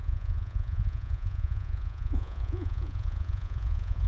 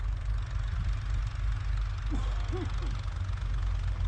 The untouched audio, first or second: second